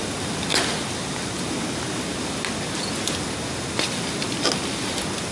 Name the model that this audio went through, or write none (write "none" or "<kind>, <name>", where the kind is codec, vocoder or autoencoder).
none